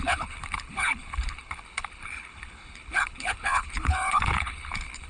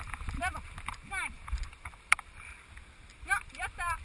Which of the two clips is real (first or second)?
second